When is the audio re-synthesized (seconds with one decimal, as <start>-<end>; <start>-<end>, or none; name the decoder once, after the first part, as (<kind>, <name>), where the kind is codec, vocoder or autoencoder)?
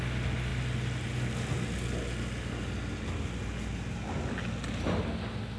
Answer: none